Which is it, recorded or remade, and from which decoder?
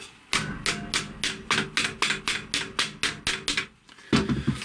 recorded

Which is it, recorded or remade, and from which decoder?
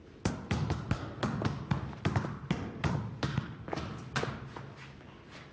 recorded